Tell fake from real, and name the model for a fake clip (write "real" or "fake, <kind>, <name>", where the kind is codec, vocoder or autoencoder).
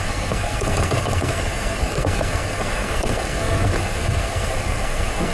fake, codec, SNAC